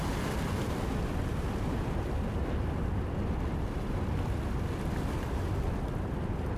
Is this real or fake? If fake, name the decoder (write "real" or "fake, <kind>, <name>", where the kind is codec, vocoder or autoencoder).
real